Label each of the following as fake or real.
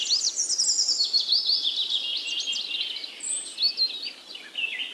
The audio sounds real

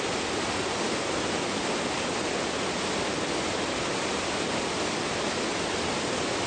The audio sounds real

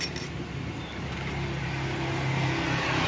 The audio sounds real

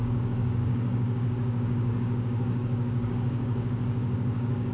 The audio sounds fake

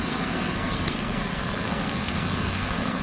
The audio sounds fake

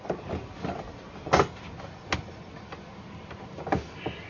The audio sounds real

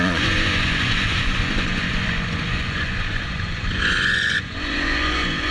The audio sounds fake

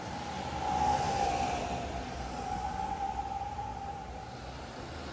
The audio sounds real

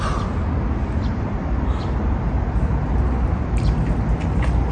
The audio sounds real